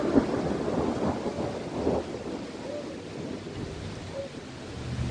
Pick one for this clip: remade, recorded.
recorded